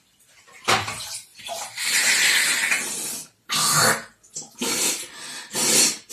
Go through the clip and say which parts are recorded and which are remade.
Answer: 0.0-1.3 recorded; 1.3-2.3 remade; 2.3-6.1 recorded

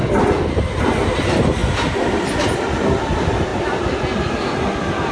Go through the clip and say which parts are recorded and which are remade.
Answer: 0.0-5.1 recorded

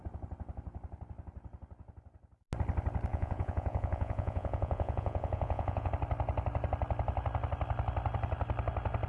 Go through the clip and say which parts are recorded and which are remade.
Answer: 0.0-3.1 recorded; 3.1-5.9 remade; 5.9-9.1 recorded

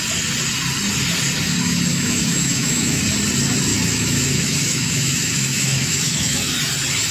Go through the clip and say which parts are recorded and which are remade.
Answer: 0.0-1.9 recorded; 1.9-3.0 remade; 3.0-3.7 recorded; 3.7-6.6 remade; 6.6-7.1 recorded